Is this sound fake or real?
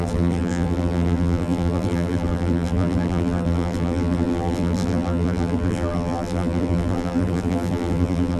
fake